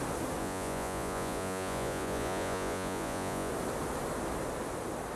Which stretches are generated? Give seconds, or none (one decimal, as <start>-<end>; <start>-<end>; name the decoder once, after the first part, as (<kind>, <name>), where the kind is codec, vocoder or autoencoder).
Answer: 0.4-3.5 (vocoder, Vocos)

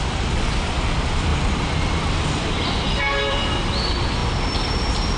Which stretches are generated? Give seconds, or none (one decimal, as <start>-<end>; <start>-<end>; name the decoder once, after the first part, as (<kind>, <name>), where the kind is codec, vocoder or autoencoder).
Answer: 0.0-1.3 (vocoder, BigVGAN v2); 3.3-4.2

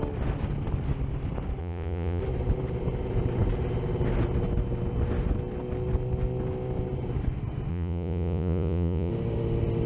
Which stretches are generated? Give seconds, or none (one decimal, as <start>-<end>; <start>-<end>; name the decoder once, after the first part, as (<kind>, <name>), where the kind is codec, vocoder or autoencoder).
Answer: 1.6-2.2 (vocoder, Vocos); 7.7-9.1

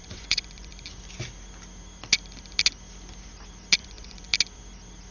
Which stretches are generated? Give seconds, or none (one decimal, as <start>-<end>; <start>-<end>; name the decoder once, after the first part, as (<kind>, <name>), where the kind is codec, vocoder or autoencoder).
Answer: 0.0-0.7 (vocoder, Vocos); 3.8-4.3

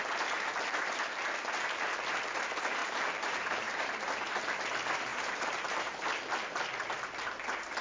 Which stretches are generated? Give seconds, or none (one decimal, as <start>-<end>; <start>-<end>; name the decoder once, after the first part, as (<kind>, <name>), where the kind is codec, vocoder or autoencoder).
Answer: 2.8-4.4 (vocoder, BigVGAN v2); 5.1-6.2